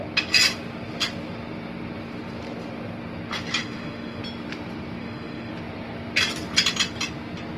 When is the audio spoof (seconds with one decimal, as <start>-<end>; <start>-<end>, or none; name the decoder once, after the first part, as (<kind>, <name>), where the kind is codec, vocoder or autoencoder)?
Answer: 3.6-4.2 (autoencoder, DAC-VAE); 5.0-5.5